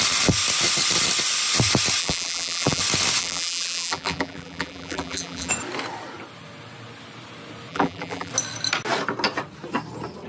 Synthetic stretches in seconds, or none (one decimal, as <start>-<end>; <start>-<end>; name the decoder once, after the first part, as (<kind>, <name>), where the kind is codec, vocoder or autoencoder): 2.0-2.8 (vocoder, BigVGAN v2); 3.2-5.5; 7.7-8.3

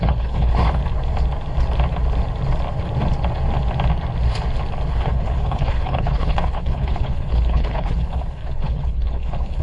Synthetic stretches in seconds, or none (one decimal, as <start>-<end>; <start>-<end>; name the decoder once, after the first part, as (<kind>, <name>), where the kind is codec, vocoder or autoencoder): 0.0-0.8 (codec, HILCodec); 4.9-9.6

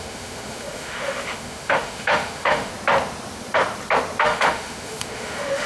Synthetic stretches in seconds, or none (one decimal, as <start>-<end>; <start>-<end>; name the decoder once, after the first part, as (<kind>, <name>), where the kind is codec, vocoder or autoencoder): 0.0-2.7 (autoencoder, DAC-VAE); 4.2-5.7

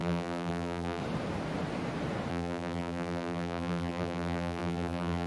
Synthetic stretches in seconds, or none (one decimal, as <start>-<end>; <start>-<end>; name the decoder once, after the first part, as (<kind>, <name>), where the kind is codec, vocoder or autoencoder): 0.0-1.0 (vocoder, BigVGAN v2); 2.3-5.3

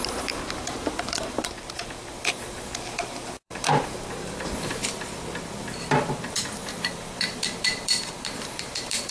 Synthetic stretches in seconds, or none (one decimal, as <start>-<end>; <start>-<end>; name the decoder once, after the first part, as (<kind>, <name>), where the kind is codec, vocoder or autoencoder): 0.0-4.8 (vocoder, BigVGAN v2); 6.3-9.1

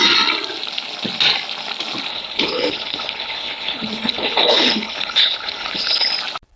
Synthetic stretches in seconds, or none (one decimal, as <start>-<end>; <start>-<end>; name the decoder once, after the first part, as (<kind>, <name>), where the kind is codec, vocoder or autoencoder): 2.1-6.1 (codec, HILCodec)